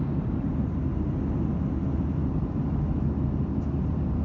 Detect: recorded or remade recorded